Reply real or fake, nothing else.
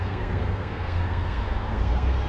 fake